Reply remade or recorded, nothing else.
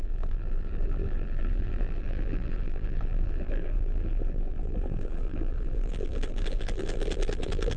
remade